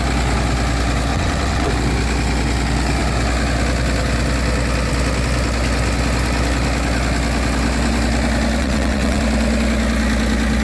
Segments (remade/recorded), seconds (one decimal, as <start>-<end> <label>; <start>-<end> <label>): 0.0-1.1 recorded; 1.1-1.7 remade; 1.7-8.6 recorded; 8.6-9.2 remade; 9.2-10.6 recorded